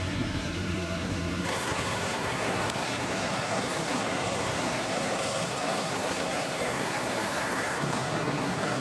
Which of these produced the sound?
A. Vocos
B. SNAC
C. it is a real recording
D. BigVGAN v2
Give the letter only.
B